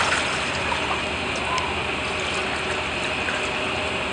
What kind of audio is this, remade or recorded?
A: recorded